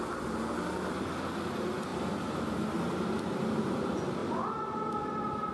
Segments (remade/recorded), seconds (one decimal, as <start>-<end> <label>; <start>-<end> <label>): 0.0-5.5 recorded